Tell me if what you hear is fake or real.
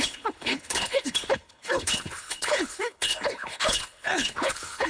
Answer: fake